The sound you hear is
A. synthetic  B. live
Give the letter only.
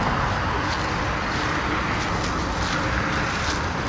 B